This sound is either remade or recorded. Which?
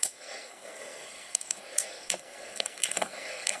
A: remade